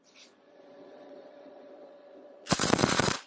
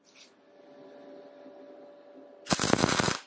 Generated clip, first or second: first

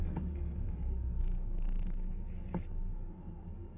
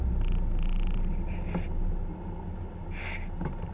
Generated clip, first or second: first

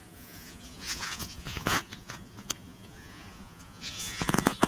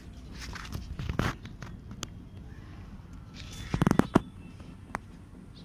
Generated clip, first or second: first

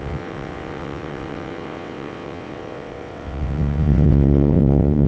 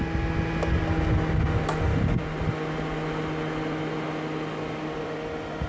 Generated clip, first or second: first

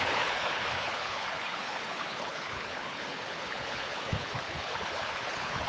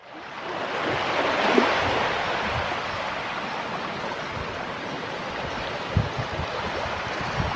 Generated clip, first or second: first